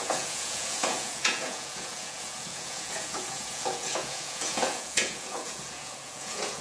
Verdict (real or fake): fake